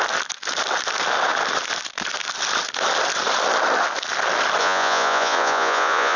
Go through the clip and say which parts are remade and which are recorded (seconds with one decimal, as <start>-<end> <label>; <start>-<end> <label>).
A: 0.0-4.6 recorded; 4.6-6.2 remade